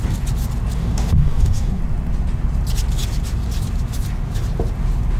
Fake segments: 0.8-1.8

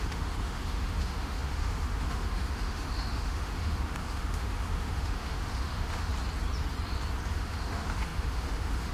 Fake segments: 0.0-6.1; 7.3-8.9

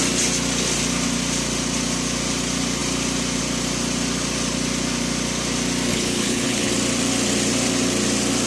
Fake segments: 5.9-6.7